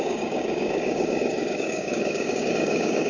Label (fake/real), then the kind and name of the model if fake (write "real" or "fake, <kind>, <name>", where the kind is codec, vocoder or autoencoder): fake, codec, DAC